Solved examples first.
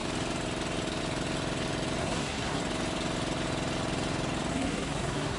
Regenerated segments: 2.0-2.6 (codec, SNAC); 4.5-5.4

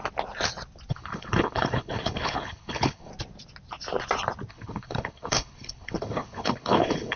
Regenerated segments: 0.9-3.1 (codec, HILCodec); 4.5-7.2

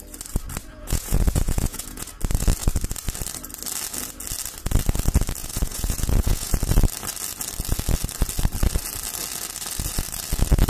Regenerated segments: 0.7-2.1 (vocoder, Vocos); 5.4-6.5